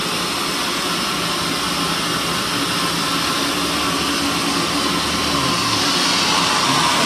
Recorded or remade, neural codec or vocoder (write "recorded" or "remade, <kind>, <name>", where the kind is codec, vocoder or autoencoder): recorded